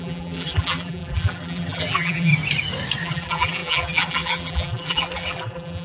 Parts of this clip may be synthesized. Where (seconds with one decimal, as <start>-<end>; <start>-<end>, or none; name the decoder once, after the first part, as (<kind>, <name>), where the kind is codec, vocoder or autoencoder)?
0.0-2.3 (vocoder, BigVGAN v2); 3.0-5.8